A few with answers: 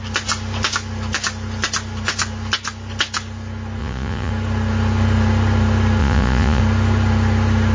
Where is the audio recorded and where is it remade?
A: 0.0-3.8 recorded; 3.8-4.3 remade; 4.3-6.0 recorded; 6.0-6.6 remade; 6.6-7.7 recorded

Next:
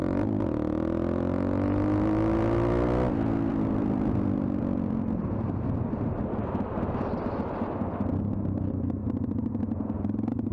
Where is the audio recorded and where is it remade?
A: 0.0-3.5 recorded; 3.5-5.8 remade; 5.8-9.0 recorded; 9.0-9.5 remade; 9.5-10.5 recorded

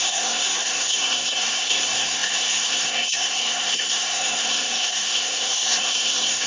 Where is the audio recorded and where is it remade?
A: 0.0-6.5 remade

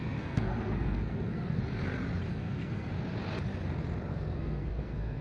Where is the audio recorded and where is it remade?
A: 0.0-1.6 remade; 1.6-2.3 recorded; 2.3-2.9 remade; 2.9-4.1 recorded; 4.1-5.2 remade